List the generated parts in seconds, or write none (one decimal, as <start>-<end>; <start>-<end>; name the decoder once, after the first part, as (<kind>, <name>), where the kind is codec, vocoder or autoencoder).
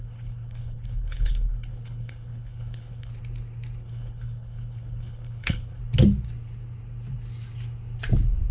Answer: 0.0-3.1 (codec, HILCodec); 3.8-5.8